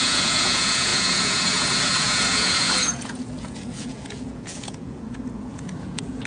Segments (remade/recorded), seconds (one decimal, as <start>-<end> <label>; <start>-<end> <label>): 0.0-6.3 remade